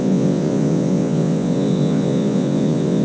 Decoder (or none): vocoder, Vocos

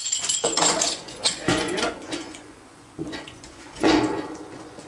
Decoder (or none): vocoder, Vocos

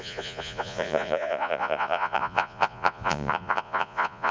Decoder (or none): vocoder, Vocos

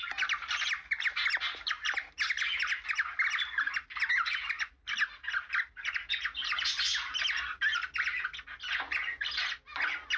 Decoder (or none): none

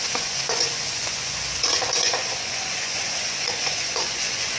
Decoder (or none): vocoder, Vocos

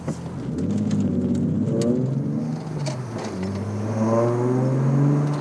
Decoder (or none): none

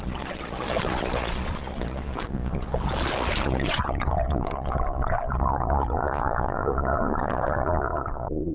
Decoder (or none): vocoder, Vocos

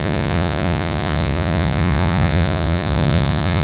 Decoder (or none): vocoder, Vocos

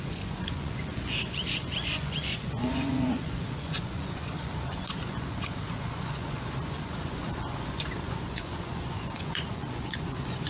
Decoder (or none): vocoder, Vocos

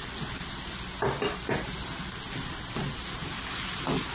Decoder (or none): none